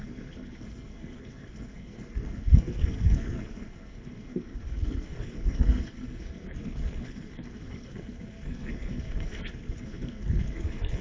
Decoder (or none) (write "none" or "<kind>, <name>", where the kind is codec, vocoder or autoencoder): codec, SNAC